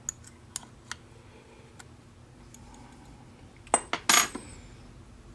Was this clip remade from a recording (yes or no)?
no